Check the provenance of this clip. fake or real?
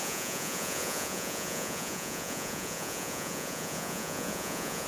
fake